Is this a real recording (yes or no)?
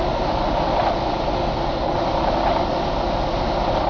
yes